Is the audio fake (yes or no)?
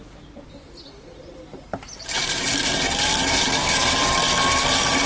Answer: no